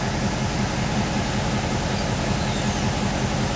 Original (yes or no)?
yes